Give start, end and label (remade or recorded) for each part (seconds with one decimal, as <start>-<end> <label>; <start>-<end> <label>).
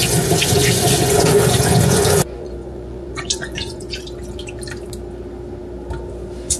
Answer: 0.0-4.0 remade; 4.0-6.6 recorded